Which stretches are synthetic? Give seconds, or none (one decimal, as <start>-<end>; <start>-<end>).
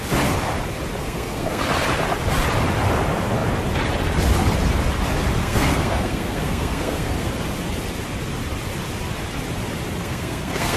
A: 1.0-1.6; 5.4-7.3; 10.0-10.8